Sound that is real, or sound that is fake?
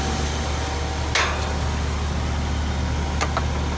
real